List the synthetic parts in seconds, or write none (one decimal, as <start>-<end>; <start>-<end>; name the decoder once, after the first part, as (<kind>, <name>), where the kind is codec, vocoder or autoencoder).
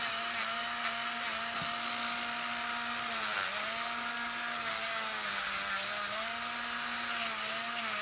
none